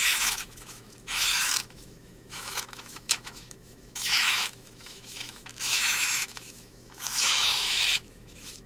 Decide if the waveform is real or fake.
fake